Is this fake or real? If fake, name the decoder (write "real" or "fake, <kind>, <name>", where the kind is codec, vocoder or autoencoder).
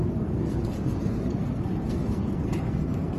fake, codec, SNAC